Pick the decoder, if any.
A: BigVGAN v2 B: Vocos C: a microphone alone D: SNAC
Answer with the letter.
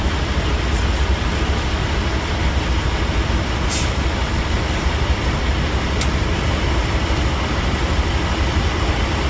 C